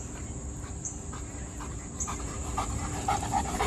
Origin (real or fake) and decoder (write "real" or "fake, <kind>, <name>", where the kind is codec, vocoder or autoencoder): fake, vocoder, BigVGAN v2